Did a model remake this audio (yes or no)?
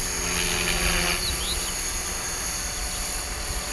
no